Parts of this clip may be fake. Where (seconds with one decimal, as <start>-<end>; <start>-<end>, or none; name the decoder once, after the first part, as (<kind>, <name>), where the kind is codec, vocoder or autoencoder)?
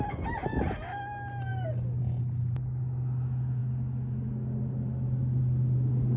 none